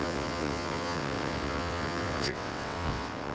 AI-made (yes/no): yes